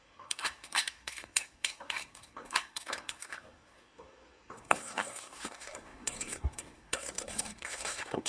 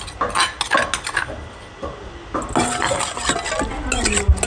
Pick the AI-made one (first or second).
first